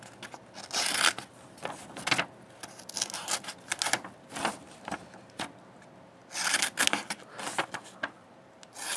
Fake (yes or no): no